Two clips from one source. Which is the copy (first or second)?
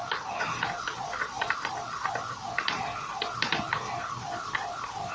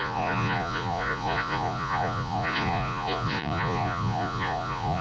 second